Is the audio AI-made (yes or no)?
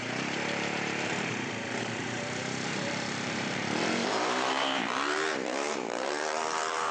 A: yes